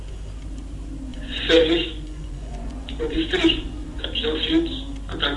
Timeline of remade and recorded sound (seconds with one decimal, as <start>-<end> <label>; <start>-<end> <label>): 0.0-1.1 recorded; 1.1-4.0 remade; 4.0-5.4 recorded